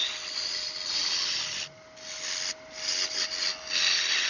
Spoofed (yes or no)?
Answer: no